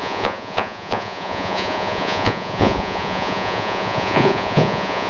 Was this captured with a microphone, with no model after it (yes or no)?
no